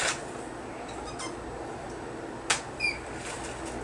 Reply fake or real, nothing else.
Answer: real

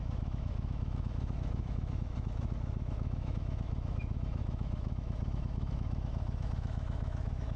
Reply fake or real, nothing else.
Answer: fake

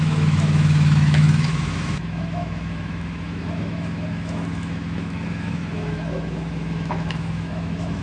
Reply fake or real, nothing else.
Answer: fake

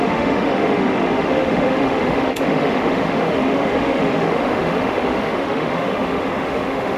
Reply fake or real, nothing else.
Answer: fake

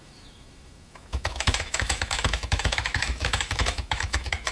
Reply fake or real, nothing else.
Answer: fake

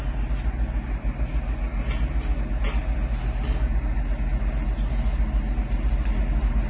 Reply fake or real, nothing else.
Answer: real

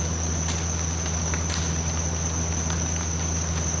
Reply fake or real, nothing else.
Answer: real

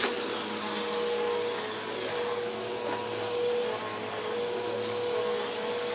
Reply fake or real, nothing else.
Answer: real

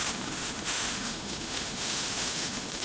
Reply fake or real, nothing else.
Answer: fake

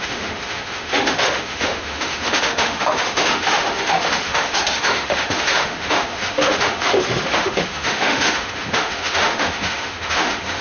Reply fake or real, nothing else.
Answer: fake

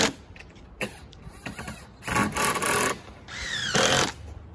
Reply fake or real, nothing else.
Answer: real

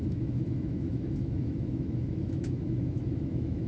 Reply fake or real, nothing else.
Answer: fake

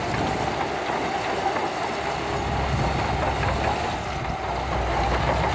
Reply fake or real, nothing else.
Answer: real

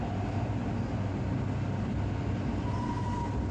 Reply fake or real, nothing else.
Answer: real